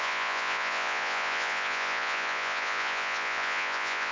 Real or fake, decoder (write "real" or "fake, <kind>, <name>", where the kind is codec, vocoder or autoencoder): fake, vocoder, Vocos